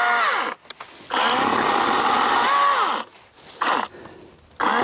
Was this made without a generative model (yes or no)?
yes